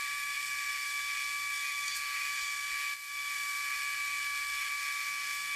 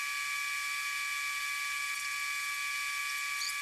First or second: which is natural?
second